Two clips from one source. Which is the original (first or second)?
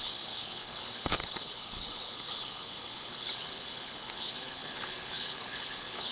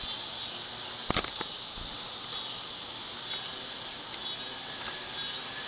second